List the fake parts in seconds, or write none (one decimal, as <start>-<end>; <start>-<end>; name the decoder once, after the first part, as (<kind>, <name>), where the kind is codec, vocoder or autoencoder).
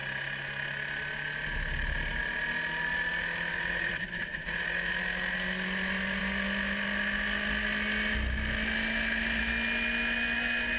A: 3.5-4.9 (vocoder, Vocos)